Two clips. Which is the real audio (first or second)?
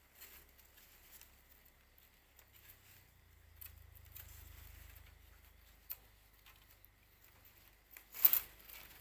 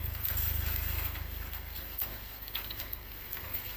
first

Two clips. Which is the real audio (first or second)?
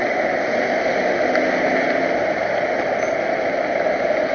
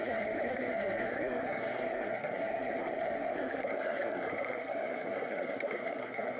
first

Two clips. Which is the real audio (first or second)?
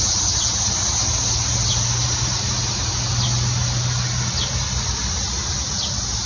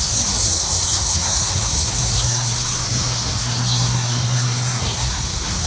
first